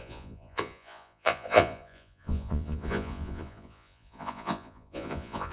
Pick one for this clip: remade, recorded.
remade